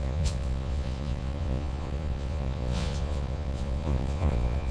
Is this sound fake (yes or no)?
yes